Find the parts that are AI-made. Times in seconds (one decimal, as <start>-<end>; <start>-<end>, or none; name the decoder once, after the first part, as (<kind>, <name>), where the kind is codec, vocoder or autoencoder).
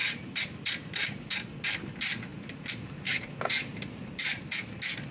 0.0-1.5 (vocoder, BigVGAN v2); 2.3-4.4